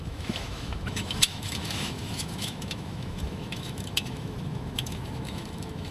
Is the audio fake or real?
fake